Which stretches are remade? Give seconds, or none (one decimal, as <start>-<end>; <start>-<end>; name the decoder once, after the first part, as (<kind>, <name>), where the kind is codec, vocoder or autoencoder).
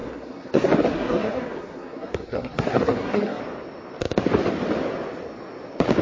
0.0-3.4 (codec, SNAC)